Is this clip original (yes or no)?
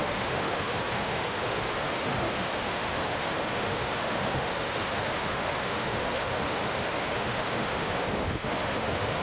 no